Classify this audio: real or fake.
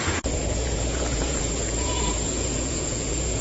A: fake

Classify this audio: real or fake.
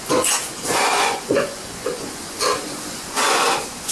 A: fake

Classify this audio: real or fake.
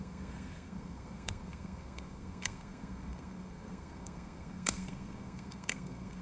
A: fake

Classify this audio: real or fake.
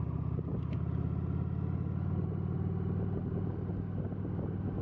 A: real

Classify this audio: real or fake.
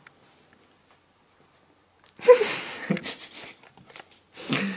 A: real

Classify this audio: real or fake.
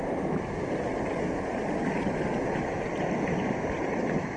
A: real